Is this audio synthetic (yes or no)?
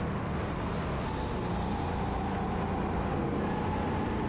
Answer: no